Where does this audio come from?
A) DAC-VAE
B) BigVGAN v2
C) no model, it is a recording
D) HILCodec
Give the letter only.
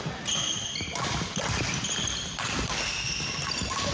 B